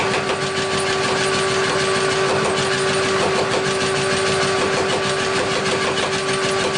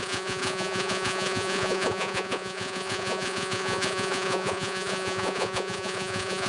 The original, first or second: first